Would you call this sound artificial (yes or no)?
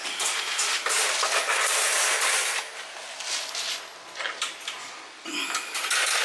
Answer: no